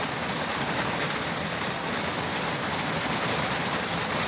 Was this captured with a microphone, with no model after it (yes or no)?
yes